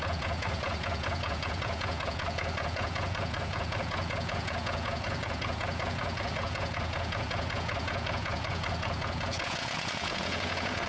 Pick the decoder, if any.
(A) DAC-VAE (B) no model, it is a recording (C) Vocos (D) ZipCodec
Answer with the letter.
C